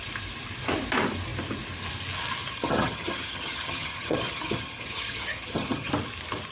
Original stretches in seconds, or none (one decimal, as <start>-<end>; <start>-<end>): 0.0-2.5; 5.9-6.5